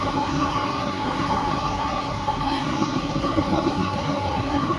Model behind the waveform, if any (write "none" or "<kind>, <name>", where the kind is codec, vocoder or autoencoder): codec, SNAC